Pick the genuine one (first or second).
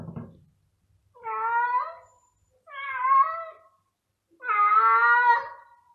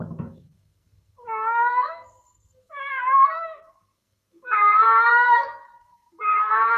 first